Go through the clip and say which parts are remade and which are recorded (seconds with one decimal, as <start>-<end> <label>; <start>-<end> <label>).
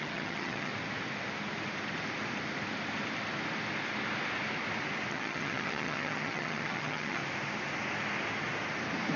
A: 0.0-0.7 remade; 0.7-5.1 recorded; 5.1-7.2 remade; 7.2-9.2 recorded